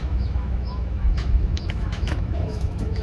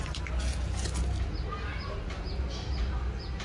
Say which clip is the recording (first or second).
second